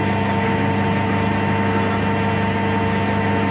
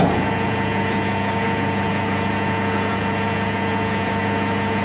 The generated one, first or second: second